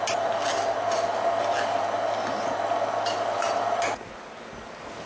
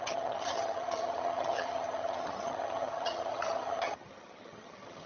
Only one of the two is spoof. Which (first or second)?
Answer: second